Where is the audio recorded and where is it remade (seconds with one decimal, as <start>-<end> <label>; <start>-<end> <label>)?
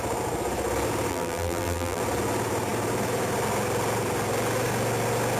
0.0-1.1 recorded; 1.1-2.0 remade; 2.0-5.4 recorded